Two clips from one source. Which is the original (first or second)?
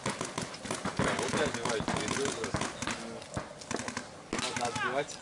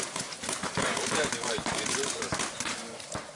first